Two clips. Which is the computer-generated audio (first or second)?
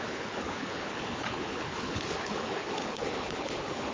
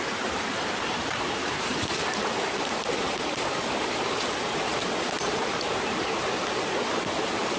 first